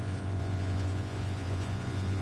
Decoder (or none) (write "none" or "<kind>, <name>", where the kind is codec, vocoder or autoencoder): vocoder, Vocos